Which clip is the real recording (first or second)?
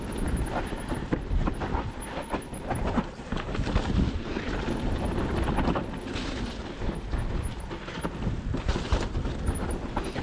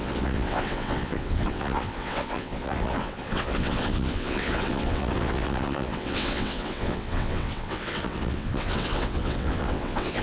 first